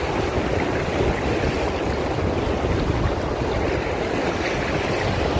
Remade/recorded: recorded